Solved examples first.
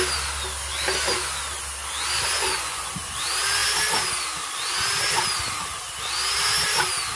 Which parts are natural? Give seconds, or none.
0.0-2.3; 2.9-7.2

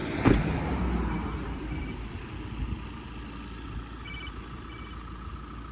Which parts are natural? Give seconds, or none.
0.0-5.7

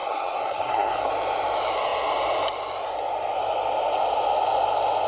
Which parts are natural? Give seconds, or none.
1.1-5.1

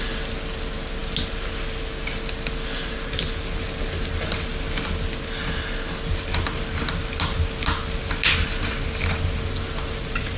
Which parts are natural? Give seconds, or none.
0.0-10.4

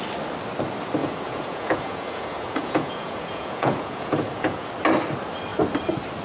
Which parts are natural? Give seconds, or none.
0.0-1.0; 4.7-6.2